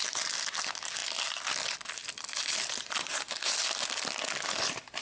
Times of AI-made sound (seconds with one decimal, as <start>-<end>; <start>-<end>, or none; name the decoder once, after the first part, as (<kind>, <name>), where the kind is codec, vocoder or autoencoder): none